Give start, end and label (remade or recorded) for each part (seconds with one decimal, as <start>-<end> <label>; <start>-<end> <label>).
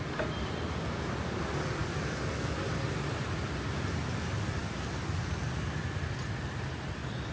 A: 0.0-7.3 recorded